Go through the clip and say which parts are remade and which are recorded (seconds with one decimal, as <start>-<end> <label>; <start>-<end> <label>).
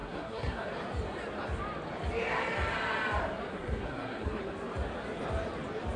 0.0-0.7 remade; 0.7-3.5 recorded; 3.5-4.4 remade; 4.4-6.0 recorded